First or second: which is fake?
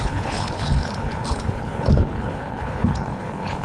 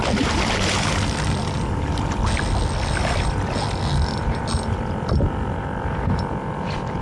first